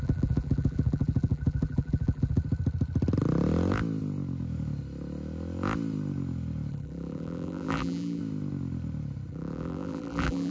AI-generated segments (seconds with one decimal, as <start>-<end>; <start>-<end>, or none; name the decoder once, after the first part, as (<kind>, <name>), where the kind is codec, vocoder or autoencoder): 0.0-2.4 (vocoder, BigVGAN v2); 6.7-8.2; 9.3-10.5